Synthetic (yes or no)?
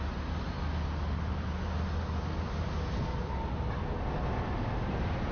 no